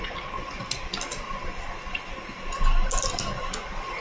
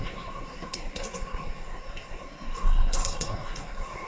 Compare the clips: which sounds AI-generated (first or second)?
second